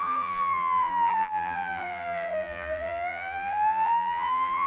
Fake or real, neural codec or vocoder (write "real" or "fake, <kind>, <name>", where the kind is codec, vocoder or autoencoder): fake, vocoder, BigVGAN v2